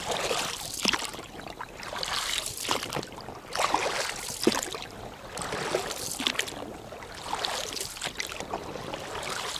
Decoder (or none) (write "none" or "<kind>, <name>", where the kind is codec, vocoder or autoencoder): none